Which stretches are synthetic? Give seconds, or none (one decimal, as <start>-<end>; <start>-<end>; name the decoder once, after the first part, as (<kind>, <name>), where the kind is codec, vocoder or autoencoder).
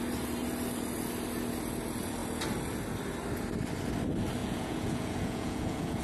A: 4.4-6.0 (vocoder, Vocos)